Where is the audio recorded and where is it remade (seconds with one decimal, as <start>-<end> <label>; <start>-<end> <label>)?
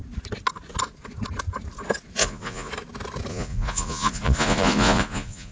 0.0-2.2 recorded; 2.2-2.7 remade; 2.7-3.3 recorded; 3.3-5.5 remade